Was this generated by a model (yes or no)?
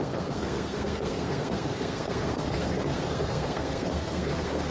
yes